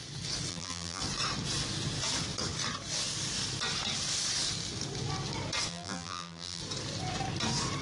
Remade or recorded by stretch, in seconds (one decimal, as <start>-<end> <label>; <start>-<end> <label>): 0.0-0.5 recorded; 0.5-1.0 remade; 1.0-5.7 recorded; 5.7-6.6 remade; 6.6-7.8 recorded